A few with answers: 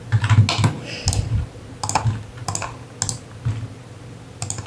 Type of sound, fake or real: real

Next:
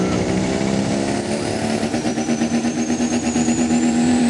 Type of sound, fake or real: fake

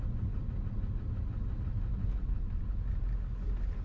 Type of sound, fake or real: real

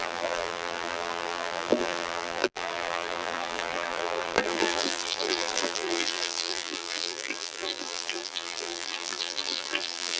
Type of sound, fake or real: fake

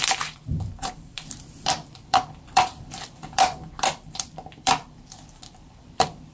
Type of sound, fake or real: fake